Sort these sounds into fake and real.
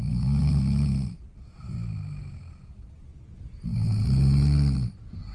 real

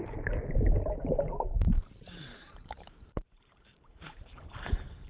fake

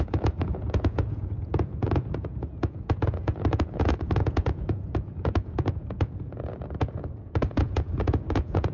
fake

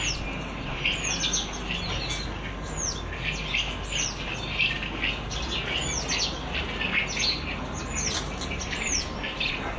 real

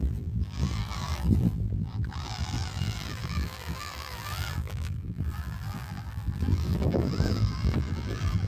fake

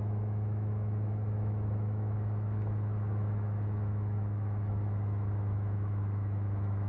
fake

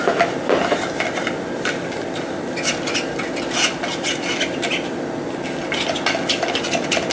real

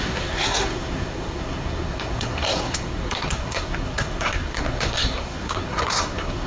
fake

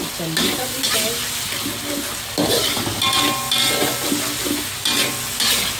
real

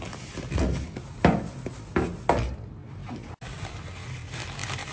real